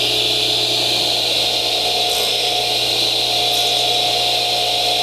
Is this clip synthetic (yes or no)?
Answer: no